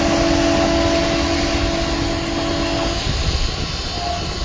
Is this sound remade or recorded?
recorded